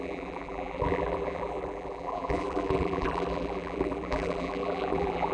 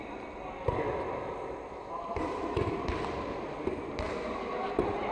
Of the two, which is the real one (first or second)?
second